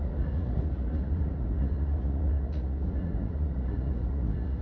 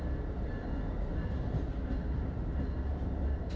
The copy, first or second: first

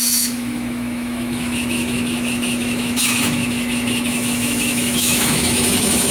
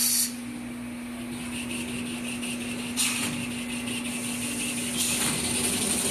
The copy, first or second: first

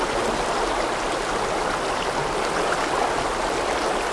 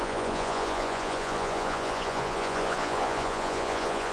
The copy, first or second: second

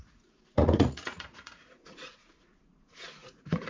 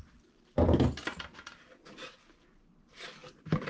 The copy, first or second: first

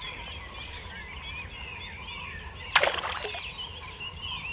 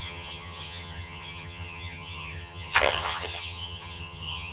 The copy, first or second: second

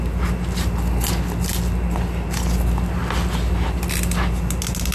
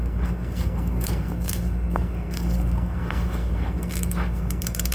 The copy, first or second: second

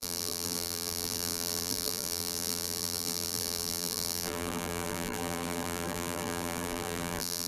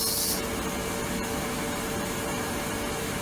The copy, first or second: first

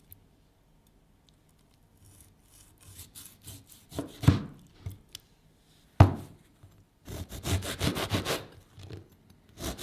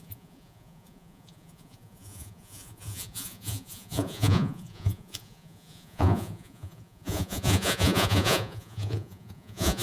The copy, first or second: second